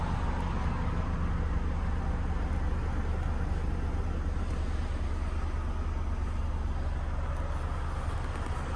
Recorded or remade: recorded